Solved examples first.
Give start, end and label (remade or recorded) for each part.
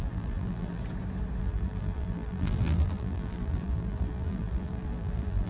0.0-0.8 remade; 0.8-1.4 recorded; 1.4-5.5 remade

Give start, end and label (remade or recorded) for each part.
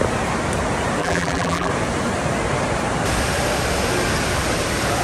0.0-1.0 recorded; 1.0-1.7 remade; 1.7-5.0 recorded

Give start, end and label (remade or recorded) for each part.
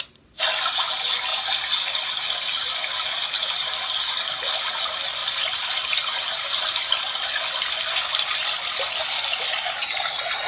0.0-1.3 recorded; 1.3-3.3 remade; 3.3-5.2 recorded; 5.2-6.3 remade; 6.3-10.5 recorded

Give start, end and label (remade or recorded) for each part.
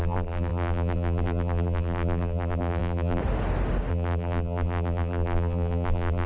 0.0-3.2 remade; 3.2-3.9 recorded; 3.9-6.3 remade